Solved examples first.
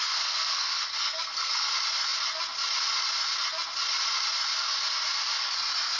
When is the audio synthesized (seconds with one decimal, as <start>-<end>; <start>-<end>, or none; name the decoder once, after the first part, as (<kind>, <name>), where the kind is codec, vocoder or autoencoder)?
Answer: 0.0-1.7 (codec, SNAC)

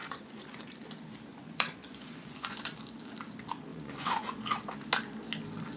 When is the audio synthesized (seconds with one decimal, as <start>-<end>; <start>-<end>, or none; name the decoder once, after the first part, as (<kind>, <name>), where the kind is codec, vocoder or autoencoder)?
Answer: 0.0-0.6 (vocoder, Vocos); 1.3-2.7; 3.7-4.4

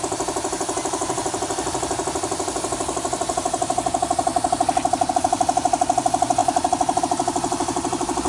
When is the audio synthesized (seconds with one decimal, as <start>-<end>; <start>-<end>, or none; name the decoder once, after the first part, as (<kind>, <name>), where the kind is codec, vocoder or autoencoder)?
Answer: none

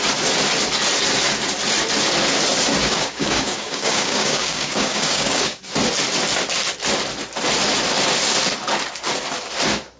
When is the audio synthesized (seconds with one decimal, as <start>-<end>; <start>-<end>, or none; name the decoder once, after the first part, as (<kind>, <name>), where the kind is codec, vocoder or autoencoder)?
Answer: 2.8-5.6 (codec, DAC)

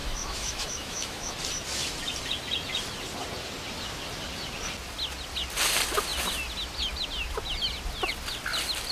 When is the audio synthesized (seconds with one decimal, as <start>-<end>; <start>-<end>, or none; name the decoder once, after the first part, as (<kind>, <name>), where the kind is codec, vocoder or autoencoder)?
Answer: 0.0-1.3 (autoencoder, DAC-VAE)

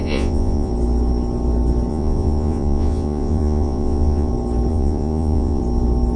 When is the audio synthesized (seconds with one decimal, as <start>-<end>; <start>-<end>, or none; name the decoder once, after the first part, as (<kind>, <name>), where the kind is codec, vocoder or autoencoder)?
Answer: 0.0-0.7 (vocoder, Vocos); 1.9-4.3; 4.7-5.6

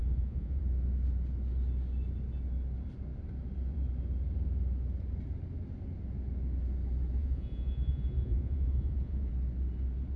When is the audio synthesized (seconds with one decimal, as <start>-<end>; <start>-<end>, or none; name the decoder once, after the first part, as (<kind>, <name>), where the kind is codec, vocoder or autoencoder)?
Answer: 0.0-0.6 (vocoder, Vocos); 7.2-9.3

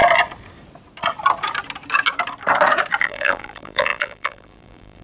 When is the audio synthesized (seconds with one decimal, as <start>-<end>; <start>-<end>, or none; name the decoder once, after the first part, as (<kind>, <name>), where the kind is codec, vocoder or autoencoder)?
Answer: 3.0-5.0 (vocoder, BigVGAN v2)